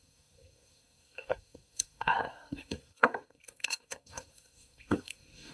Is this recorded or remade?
remade